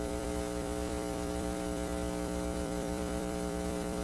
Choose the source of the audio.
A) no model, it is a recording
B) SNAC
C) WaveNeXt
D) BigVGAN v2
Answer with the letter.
D